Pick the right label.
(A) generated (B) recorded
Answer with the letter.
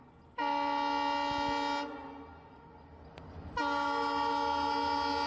B